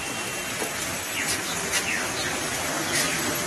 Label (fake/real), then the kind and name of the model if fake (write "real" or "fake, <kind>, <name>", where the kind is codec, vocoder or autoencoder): real